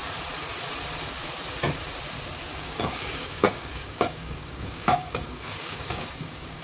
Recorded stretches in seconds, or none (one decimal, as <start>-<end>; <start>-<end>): 0.0-2.5